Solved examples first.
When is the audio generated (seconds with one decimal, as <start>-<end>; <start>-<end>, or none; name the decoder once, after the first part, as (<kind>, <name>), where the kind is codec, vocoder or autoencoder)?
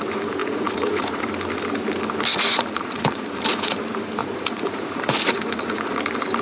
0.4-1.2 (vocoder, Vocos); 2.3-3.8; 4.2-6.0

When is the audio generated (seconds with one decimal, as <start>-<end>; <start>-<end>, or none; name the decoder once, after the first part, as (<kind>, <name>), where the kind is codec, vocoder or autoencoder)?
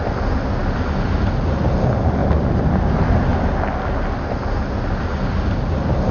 none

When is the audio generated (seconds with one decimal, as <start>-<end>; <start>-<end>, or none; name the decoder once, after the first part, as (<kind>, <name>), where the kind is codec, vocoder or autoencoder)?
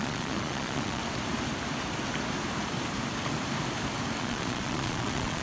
0.0-1.0 (vocoder, Vocos); 4.2-5.4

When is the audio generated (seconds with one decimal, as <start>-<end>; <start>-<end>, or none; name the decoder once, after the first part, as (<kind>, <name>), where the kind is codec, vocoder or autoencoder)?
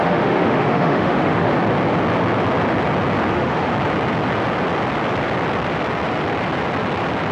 0.0-1.5 (autoencoder, DAC-VAE); 3.3-3.7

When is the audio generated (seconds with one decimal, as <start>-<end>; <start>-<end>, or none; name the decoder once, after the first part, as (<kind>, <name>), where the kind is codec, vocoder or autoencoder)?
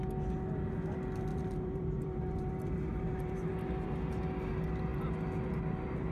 1.3-2.5 (vocoder, BigVGAN v2); 2.9-3.5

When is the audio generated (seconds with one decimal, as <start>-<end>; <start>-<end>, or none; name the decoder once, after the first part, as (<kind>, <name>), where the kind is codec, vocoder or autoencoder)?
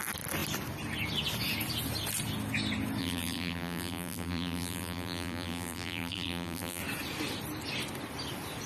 3.0-6.8 (vocoder, BigVGAN v2)